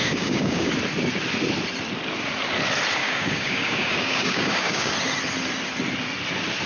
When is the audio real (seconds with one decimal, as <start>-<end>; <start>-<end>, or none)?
0.7-3.0; 4.9-6.7